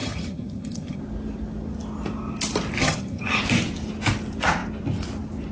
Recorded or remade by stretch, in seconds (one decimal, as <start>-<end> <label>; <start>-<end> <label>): 0.0-1.0 remade; 1.0-2.8 recorded; 2.8-3.4 remade; 3.4-5.5 recorded